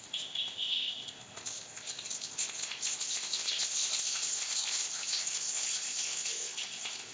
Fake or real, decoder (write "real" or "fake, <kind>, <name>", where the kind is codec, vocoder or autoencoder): fake, codec, ZipCodec